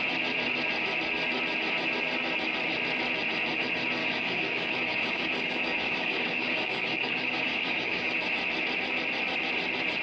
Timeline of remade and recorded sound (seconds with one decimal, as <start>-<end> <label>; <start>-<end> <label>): 0.0-4.0 recorded; 4.0-8.1 remade; 8.1-10.0 recorded